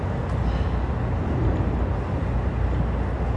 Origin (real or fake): real